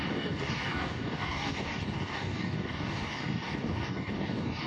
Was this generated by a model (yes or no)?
yes